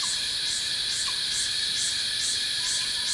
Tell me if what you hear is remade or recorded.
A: remade